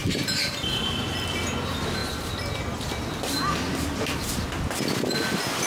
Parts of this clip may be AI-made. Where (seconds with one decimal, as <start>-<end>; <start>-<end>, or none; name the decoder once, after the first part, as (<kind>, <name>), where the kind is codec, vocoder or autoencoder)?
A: 0.0-1.0 (vocoder, BigVGAN v2)